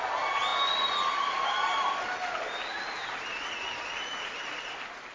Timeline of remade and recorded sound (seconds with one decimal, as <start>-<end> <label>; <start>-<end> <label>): 0.0-5.1 recorded